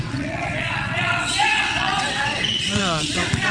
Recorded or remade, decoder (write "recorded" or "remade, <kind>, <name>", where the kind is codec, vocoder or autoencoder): remade, vocoder, WaveNeXt